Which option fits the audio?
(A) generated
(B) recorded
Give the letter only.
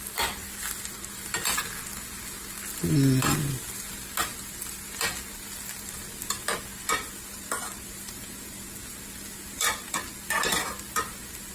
B